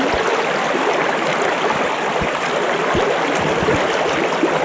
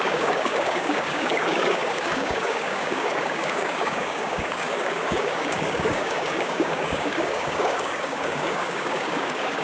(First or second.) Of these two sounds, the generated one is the second